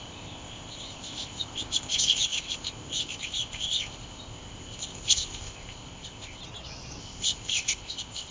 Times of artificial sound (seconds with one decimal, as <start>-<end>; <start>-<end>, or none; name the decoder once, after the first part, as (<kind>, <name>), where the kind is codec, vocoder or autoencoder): 0.0-6.4 (codec, ZipCodec); 7.0-8.3